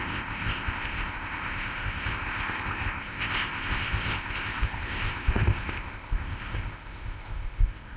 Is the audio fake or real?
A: fake